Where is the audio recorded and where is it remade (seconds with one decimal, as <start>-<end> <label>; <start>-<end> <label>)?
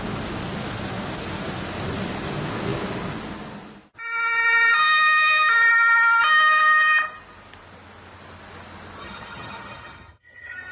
0.0-9.0 recorded; 9.0-10.7 remade